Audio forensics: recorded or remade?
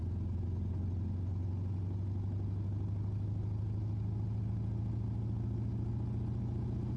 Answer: recorded